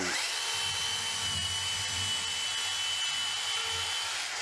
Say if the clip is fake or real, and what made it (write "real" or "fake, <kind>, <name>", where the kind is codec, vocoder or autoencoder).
real